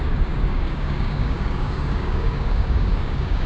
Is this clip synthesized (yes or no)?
yes